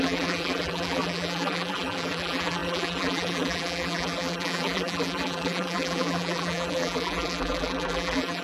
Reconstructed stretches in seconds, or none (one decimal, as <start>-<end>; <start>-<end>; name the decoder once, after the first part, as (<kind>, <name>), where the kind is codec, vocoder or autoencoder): 0.0-8.4 (vocoder, BigVGAN v2)